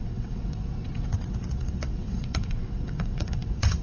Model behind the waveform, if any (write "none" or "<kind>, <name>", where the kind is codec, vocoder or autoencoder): vocoder, WaveNeXt